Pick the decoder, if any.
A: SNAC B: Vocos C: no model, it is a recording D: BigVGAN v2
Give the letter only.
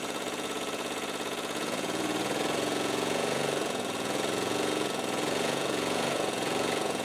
B